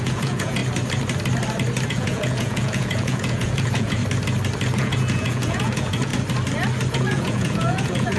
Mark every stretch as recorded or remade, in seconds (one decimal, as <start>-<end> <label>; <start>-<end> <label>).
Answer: 0.0-0.6 remade; 0.6-1.9 recorded; 1.9-4.0 remade; 4.0-4.8 recorded; 4.8-6.1 remade; 6.1-6.9 recorded; 6.9-8.2 remade

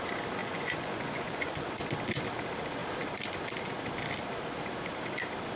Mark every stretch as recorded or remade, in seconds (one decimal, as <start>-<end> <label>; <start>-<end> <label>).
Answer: 0.0-0.4 recorded; 0.4-1.7 remade; 1.7-5.6 recorded

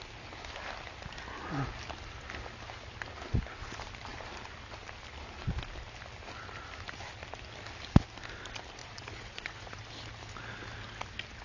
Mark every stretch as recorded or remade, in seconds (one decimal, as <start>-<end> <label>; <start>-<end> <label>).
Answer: 0.0-8.8 recorded; 8.8-9.8 remade; 9.8-11.4 recorded

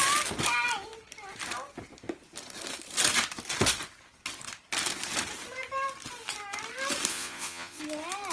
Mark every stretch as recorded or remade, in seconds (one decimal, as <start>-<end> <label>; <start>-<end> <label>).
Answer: 0.0-7.1 recorded; 7.1-7.8 remade; 7.8-8.3 recorded

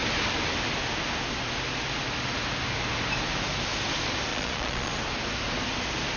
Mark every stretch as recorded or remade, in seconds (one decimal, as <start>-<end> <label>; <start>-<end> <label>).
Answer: 0.0-4.3 recorded; 4.3-4.9 remade; 4.9-6.2 recorded

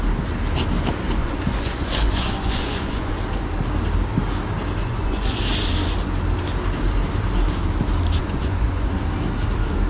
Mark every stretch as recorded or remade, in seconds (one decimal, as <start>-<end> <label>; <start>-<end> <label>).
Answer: 0.0-1.2 recorded; 1.2-3.1 remade; 3.1-4.8 recorded; 4.8-5.4 remade; 5.4-8.2 recorded; 8.2-9.0 remade; 9.0-9.9 recorded

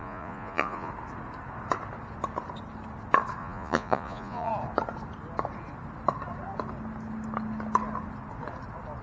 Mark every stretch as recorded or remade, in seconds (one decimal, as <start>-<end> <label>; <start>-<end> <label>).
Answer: 0.0-0.9 remade; 0.9-3.4 recorded; 3.4-4.5 remade; 4.5-9.0 recorded

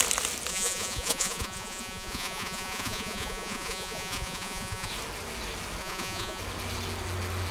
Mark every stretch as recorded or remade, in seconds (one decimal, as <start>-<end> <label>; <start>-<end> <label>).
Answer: 0.0-0.5 recorded; 0.5-4.9 remade; 4.9-5.8 recorded; 5.8-6.4 remade; 6.4-7.5 recorded